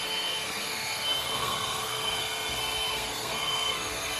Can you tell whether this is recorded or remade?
remade